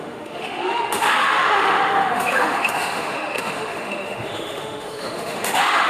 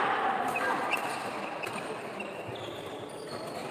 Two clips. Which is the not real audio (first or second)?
first